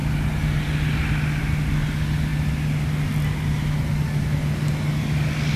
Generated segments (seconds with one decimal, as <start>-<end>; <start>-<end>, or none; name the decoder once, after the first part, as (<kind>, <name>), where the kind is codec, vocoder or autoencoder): 0.0-1.4 (vocoder, BigVGAN v2); 2.3-4.2